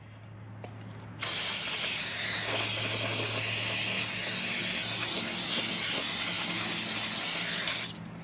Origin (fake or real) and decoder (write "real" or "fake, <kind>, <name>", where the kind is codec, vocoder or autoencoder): real